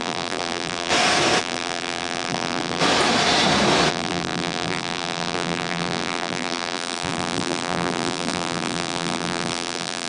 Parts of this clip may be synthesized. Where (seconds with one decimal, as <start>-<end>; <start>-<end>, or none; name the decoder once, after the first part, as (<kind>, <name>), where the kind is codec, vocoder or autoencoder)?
0.0-0.9 (vocoder, BigVGAN v2); 1.4-2.8; 3.9-10.1